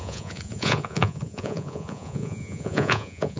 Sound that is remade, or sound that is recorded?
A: remade